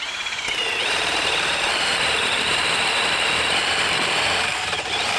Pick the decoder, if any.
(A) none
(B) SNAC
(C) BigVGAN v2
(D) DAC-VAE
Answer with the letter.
C